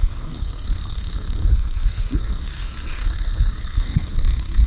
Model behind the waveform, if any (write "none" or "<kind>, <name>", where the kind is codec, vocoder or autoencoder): codec, SNAC